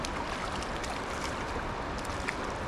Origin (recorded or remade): recorded